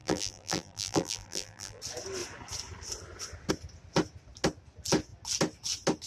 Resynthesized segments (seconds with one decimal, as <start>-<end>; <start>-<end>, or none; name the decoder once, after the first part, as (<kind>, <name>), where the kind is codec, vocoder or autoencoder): 0.0-1.8 (vocoder, BigVGAN v2)